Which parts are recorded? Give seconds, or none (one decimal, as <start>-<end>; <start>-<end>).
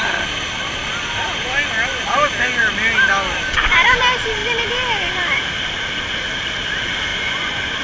0.0-7.1